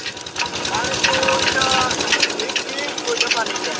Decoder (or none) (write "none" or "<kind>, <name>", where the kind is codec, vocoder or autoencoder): none